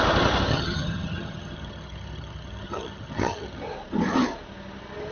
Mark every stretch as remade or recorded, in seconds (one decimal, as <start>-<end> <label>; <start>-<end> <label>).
0.0-0.5 recorded; 0.5-3.6 remade; 3.6-5.1 recorded